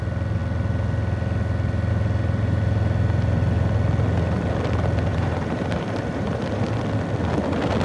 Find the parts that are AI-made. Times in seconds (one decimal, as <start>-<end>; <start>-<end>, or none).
5.1-6.8